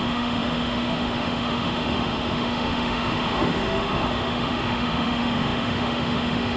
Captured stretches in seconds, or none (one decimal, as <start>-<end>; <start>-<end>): none